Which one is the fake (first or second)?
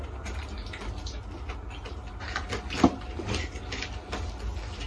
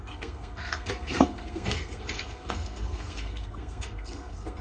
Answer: second